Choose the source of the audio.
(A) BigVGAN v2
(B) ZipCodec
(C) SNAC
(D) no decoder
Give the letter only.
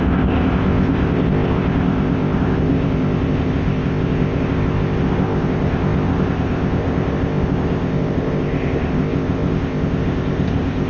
B